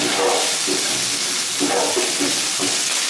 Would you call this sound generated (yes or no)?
no